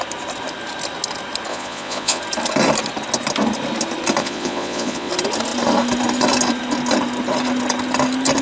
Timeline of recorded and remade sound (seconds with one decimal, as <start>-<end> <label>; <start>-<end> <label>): 0.0-1.5 recorded; 1.5-2.2 remade; 2.2-4.2 recorded; 4.2-5.1 remade; 5.1-8.4 recorded